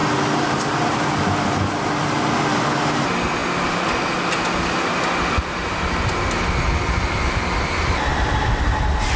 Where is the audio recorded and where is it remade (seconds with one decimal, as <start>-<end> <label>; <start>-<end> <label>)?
0.0-9.2 recorded